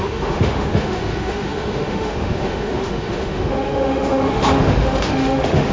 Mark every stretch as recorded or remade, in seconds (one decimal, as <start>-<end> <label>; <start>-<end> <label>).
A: 0.0-5.7 remade